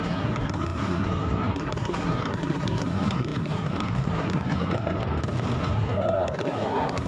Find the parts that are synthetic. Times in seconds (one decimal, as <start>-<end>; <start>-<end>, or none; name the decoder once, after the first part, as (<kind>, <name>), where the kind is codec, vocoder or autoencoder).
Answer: 0.0-5.0 (codec, SNAC); 5.6-7.1